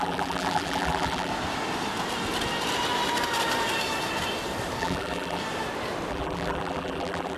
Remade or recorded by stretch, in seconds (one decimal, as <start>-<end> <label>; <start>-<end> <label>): 0.0-1.3 remade; 1.3-4.8 recorded; 4.8-5.4 remade; 5.4-6.1 recorded; 6.1-7.4 remade